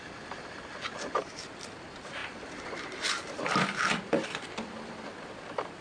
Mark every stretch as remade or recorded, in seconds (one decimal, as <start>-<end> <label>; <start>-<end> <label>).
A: 0.0-5.8 remade